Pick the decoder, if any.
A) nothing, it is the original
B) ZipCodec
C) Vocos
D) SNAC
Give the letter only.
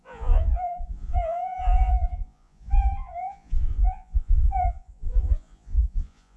C